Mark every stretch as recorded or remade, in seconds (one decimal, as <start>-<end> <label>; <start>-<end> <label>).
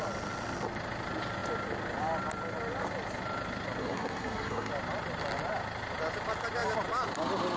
0.0-3.8 recorded; 3.8-4.7 remade; 4.7-7.6 recorded